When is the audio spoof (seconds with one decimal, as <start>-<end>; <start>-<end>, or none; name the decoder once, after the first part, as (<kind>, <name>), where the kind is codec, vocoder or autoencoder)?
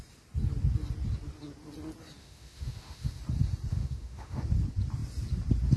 2.2-3.2 (autoencoder, DAC-VAE); 3.7-4.4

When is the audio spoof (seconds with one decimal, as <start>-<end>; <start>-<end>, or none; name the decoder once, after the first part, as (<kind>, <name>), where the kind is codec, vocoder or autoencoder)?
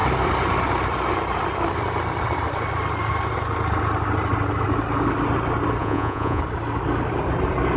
5.8-6.4 (vocoder, Vocos)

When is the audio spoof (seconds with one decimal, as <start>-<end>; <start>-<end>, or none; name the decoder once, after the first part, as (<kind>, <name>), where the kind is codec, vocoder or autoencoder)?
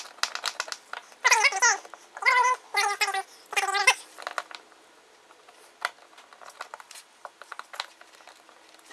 none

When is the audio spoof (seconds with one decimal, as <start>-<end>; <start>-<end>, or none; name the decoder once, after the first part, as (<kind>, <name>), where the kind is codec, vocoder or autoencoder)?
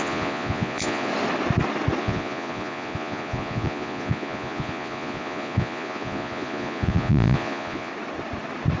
0.0-1.1 (vocoder, Vocos); 2.0-7.9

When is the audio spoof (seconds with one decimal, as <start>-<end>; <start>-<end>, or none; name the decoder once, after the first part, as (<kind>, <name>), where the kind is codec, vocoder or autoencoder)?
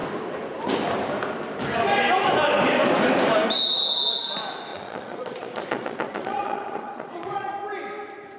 4.7-7.5 (vocoder, Vocos)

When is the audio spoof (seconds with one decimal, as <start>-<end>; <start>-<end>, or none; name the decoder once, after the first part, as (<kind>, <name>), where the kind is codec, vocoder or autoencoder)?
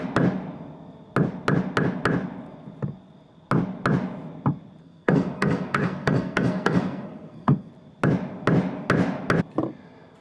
4.8-7.7 (codec, SNAC)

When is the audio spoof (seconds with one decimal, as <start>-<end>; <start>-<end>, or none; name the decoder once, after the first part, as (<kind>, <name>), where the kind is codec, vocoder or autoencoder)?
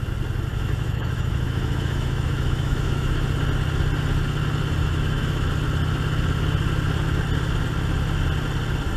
0.5-3.2 (autoencoder, DAC-VAE); 4.8-5.5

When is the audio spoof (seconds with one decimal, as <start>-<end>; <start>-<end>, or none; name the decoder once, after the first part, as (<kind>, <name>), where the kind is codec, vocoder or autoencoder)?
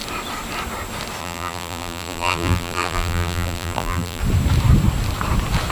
1.2-4.2 (vocoder, BigVGAN v2)